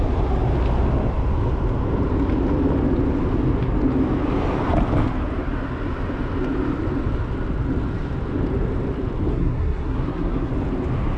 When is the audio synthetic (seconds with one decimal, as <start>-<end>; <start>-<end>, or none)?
9.3-10.5